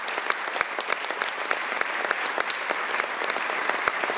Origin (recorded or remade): recorded